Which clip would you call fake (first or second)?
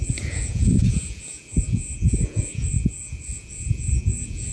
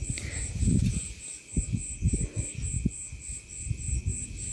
first